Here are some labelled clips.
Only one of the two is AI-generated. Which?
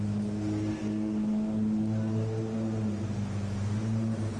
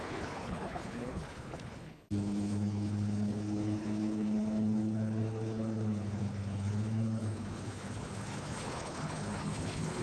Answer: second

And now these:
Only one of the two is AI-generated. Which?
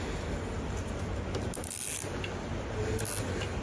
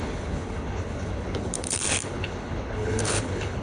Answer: second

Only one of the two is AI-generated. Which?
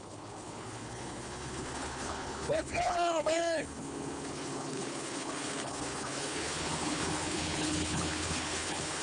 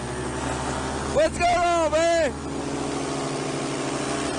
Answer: first